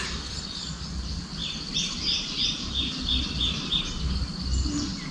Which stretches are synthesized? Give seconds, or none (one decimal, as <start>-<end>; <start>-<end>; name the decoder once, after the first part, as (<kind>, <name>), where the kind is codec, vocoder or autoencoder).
1.4-3.8 (vocoder, BigVGAN v2)